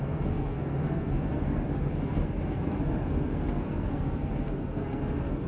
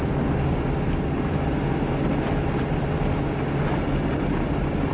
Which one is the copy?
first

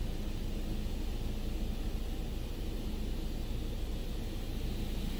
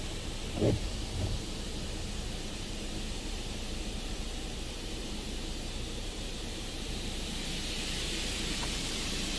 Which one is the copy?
second